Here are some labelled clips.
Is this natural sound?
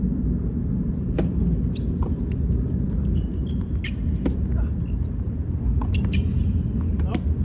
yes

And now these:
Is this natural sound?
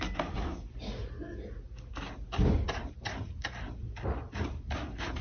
yes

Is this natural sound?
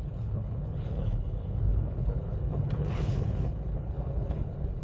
no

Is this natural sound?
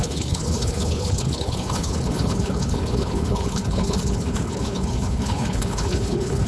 no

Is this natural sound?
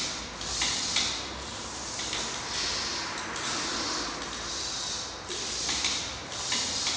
yes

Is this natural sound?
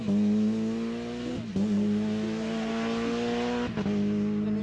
yes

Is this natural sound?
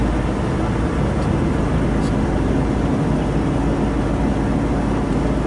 yes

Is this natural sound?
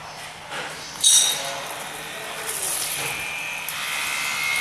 yes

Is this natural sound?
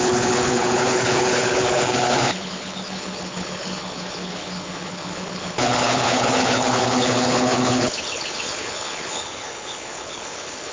no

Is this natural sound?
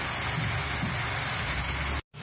yes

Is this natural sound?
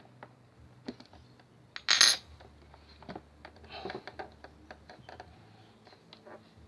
yes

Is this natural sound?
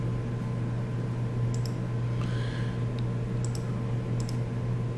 yes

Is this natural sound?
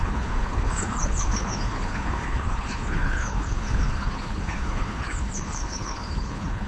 no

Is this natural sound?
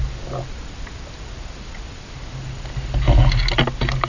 yes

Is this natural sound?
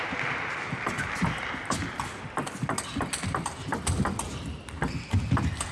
yes